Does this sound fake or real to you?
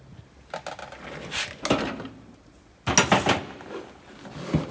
real